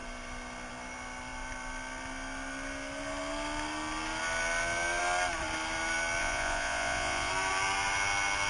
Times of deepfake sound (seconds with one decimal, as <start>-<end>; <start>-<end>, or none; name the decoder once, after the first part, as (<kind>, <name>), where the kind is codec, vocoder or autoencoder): 6.2-7.3 (vocoder, Vocos)